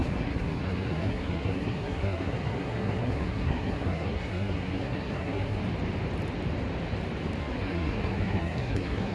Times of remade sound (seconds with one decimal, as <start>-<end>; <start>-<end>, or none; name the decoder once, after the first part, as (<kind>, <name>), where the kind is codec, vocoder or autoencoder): 0.0-5.6 (codec, SNAC); 7.4-9.1